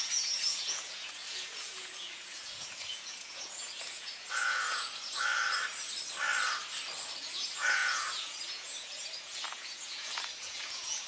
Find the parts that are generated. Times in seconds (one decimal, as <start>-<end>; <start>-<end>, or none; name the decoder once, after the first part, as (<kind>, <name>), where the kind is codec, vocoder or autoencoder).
0.0-5.3 (vocoder, Vocos); 7.2-11.1